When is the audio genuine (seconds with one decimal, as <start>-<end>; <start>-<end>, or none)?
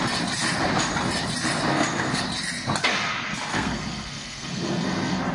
0.0-1.7; 2.2-3.5